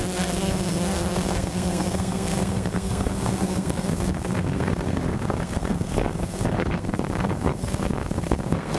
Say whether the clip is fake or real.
fake